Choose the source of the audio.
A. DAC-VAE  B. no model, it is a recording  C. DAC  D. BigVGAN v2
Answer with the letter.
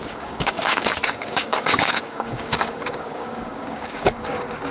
C